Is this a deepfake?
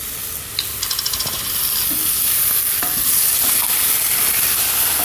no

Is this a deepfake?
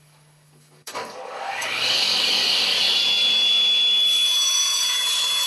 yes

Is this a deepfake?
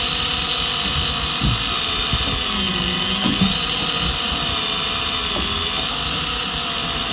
no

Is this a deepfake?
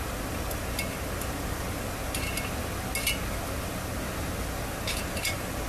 no